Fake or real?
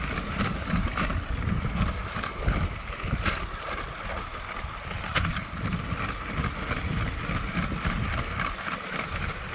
real